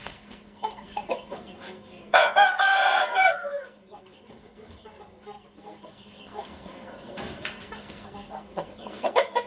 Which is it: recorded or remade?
remade